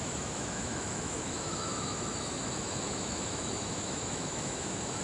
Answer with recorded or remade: remade